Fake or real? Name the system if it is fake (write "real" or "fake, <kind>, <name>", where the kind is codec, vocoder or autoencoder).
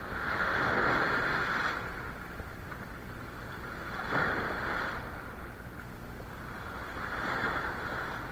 real